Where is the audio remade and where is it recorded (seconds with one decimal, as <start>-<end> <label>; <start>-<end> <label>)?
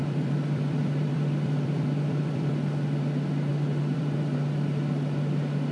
0.0-2.5 remade; 2.5-3.5 recorded; 3.5-4.2 remade; 4.2-5.7 recorded